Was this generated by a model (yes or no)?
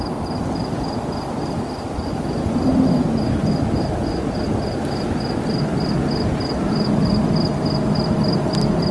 no